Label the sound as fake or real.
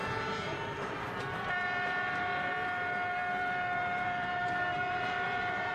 fake